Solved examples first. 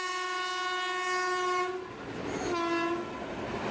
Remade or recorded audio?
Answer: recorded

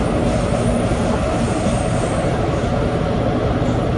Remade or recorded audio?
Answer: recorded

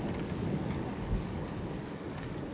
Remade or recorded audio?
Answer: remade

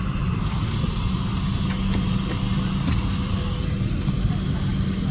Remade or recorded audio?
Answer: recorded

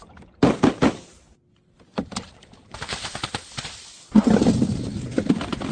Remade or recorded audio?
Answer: remade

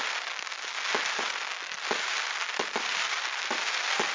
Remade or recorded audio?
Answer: remade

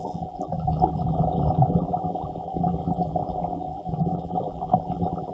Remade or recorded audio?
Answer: remade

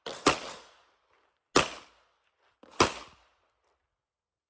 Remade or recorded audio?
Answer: recorded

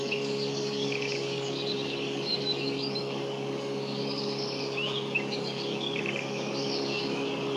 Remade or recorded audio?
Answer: remade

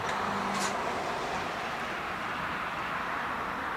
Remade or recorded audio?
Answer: recorded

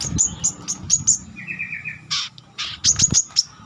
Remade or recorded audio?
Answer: recorded